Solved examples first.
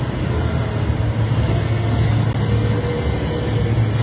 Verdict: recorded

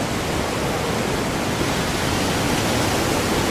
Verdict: recorded